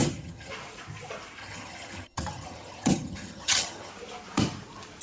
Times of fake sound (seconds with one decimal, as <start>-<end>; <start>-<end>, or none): 0.0-0.5; 1.4-3.9